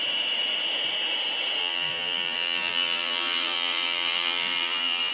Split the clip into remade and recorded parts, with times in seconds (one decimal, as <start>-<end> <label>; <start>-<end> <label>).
0.0-1.6 recorded; 1.6-5.1 remade